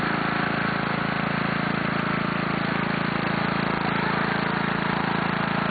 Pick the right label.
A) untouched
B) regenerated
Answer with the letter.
A